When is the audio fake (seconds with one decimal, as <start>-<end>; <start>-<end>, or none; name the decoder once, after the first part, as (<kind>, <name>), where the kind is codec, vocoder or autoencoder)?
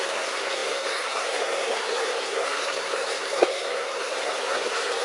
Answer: 0.0-5.0 (codec, SNAC)